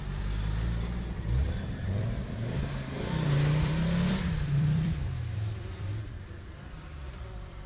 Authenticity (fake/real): fake